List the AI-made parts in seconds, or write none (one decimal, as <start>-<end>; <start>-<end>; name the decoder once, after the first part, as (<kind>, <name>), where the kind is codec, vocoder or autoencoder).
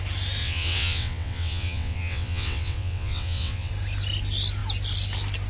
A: 0.4-3.7 (vocoder, WaveNeXt)